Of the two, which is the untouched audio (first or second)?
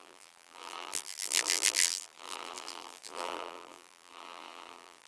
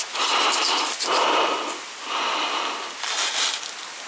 second